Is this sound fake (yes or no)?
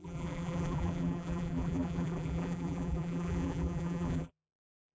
yes